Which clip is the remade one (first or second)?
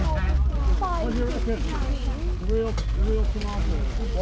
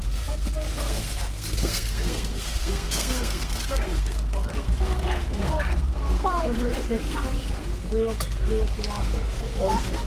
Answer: second